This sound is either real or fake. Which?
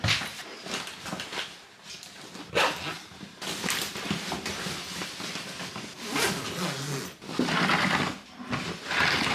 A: real